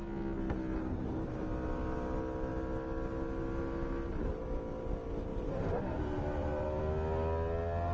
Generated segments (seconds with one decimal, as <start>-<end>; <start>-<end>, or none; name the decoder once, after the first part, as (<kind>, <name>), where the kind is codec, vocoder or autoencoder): 5.3-6.8 (vocoder, BigVGAN v2)